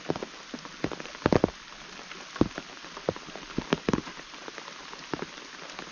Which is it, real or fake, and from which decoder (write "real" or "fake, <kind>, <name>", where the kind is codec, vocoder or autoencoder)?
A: real